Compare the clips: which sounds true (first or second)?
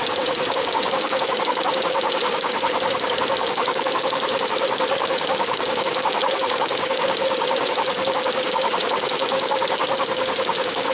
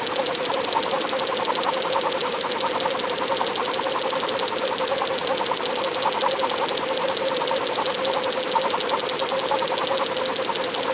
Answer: second